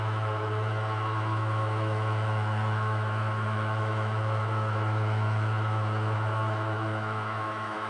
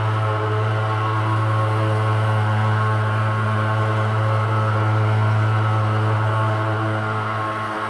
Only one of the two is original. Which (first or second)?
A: second